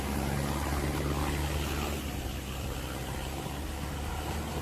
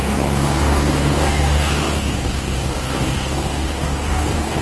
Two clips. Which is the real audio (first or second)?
first